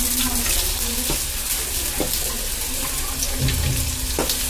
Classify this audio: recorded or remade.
recorded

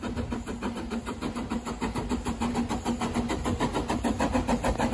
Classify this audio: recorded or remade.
recorded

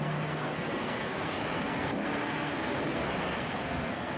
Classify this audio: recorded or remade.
remade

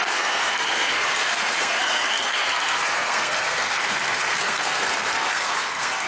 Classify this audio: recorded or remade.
remade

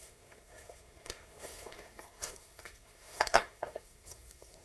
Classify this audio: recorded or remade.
remade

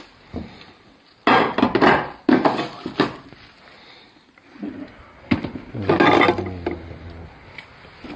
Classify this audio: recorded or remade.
recorded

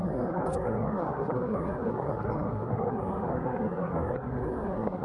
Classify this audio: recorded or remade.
remade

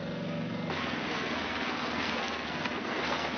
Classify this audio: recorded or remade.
remade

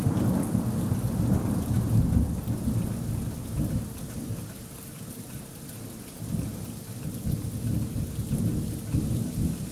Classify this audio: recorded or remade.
recorded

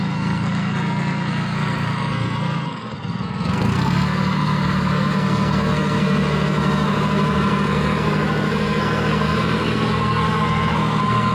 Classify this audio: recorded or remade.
remade